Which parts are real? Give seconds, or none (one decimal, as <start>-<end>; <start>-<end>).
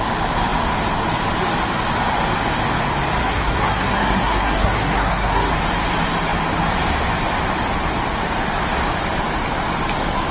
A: 0.0-3.2; 5.5-10.3